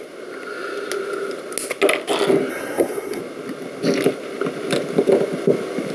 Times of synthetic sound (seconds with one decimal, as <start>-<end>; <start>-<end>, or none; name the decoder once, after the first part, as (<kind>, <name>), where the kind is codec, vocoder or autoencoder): 2.5-3.2 (codec, SNAC)